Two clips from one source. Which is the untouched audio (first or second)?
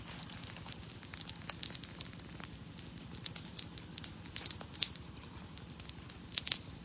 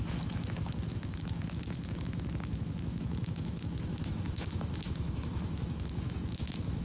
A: first